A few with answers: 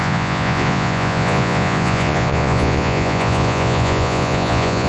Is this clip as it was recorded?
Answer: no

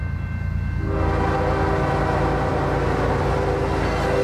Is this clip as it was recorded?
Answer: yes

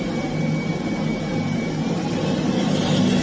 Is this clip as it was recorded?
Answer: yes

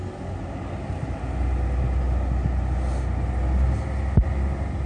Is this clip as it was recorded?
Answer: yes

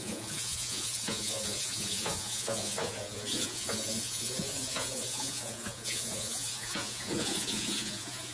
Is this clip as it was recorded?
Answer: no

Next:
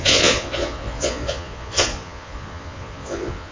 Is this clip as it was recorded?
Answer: no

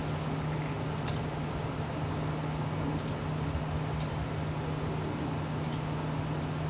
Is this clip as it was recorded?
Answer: yes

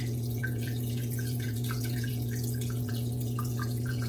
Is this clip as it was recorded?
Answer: no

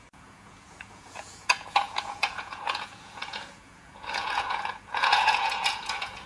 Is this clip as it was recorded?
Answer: no